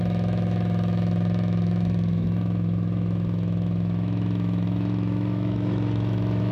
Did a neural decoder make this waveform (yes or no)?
yes